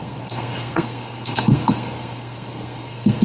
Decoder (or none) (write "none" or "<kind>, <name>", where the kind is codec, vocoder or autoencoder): codec, SNAC